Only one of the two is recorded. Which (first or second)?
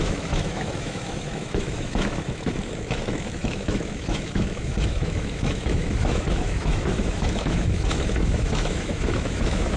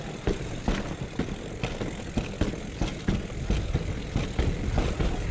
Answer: second